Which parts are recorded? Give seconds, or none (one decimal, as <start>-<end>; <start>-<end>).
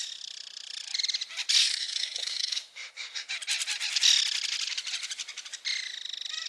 0.0-1.6; 3.3-6.5